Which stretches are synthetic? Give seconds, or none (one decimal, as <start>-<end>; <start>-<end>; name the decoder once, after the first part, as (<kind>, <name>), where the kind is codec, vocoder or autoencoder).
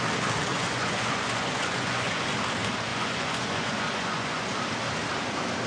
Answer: 0.5-2.3 (vocoder, Vocos); 2.9-4.5